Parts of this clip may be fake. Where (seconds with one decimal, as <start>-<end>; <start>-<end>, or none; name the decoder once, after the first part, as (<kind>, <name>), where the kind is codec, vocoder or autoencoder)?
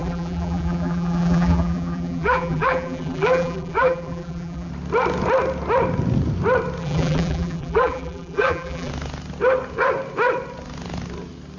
0.0-4.7 (vocoder, BigVGAN v2); 6.8-8.9